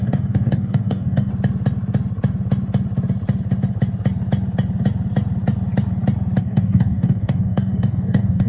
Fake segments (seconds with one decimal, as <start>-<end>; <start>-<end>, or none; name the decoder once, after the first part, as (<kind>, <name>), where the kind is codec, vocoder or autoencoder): 0.0-1.3 (codec, DAC); 6.4-8.5